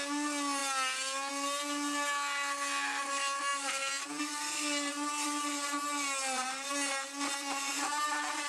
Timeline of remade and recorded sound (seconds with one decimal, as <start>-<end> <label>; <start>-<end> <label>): 0.0-8.5 recorded